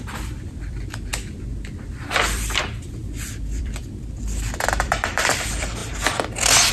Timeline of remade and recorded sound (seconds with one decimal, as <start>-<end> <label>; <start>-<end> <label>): 0.0-1.1 remade; 1.1-1.8 recorded; 1.8-5.8 remade; 5.8-6.7 recorded